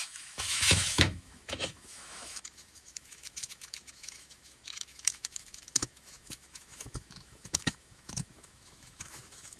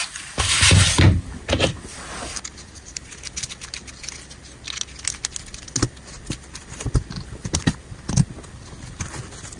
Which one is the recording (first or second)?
second